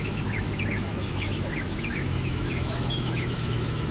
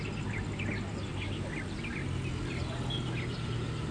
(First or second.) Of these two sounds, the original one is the second